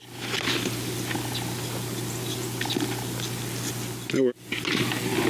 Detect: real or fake real